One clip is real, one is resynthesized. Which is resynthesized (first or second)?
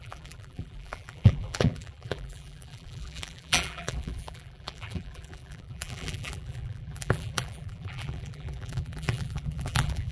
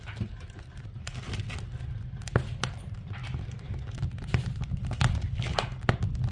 first